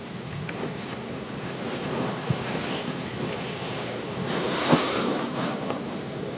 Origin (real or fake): fake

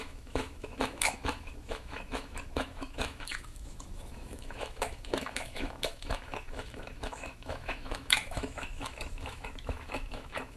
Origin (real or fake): fake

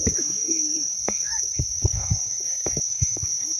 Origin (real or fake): fake